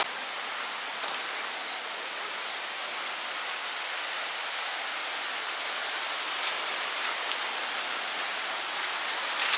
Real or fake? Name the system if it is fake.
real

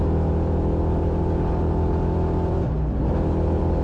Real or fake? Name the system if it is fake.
real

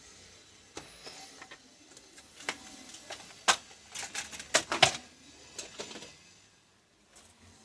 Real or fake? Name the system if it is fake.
real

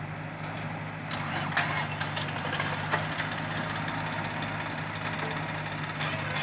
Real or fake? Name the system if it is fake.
real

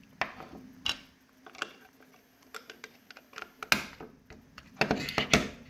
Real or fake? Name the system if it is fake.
real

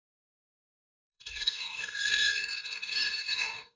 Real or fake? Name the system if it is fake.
fake, codec, DAC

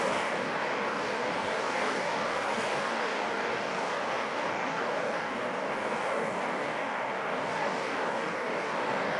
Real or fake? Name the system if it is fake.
fake, codec, DAC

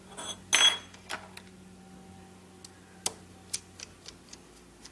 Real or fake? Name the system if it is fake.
real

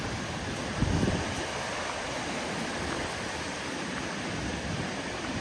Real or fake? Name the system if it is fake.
fake, vocoder, BigVGAN v2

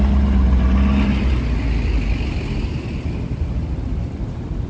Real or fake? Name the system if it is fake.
real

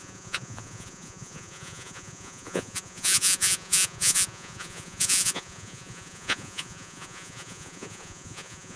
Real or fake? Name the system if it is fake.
fake, vocoder, Vocos